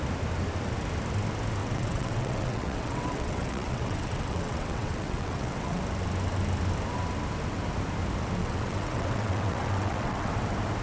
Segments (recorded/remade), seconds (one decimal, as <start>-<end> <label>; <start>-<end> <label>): 0.0-1.6 recorded; 1.6-5.8 remade; 5.8-8.4 recorded; 8.4-10.3 remade; 10.3-10.8 recorded